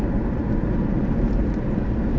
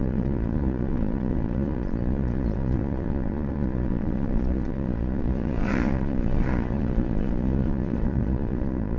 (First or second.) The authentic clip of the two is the first